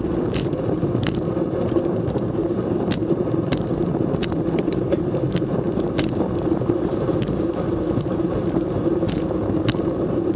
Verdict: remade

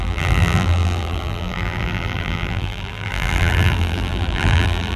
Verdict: remade